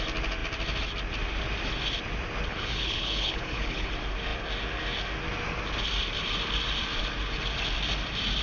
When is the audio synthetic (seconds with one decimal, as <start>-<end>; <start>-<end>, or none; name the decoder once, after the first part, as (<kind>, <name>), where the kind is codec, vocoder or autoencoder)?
2.5-3.9 (codec, HILCodec)